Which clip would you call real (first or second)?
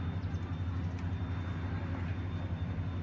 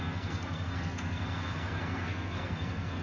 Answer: first